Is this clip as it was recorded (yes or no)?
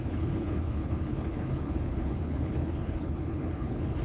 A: no